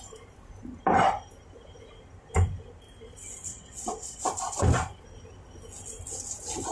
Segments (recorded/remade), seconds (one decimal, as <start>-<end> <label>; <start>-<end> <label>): 0.0-3.5 recorded; 3.5-4.2 remade; 4.2-6.7 recorded